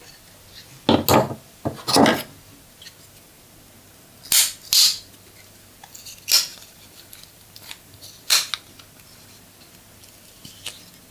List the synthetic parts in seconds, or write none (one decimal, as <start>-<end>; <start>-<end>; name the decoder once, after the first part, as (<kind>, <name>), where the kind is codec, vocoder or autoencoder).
6.5-8.5 (vocoder, BigVGAN v2)